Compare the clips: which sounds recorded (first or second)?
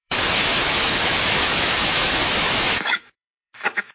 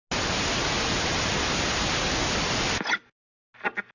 second